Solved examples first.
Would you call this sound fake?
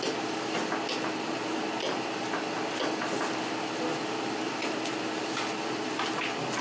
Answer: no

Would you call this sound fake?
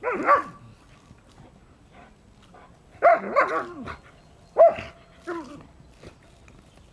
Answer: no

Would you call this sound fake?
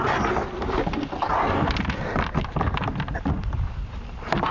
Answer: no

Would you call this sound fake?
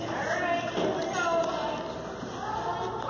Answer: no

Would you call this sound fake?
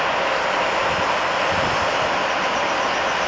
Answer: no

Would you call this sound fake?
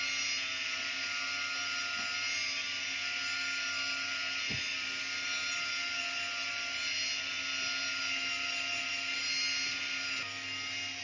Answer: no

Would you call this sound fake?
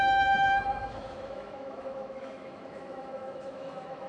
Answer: yes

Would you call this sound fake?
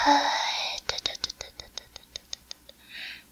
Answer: no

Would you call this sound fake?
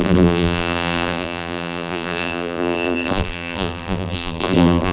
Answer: yes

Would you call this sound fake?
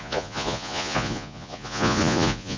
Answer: yes